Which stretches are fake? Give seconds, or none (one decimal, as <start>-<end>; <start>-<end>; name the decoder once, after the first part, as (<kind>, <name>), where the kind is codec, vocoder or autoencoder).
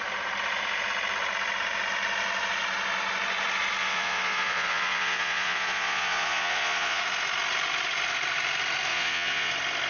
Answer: 3.8-7.0 (vocoder, Vocos); 8.9-9.5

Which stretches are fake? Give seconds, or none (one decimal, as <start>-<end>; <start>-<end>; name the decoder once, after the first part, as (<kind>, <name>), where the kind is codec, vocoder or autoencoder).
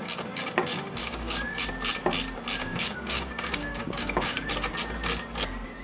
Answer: 1.0-1.7 (codec, DAC); 2.6-4.5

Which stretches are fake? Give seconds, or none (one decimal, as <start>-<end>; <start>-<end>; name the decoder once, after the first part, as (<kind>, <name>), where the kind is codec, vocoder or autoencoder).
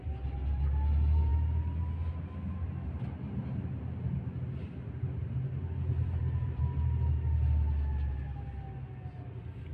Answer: 6.0-6.6 (vocoder, BigVGAN v2)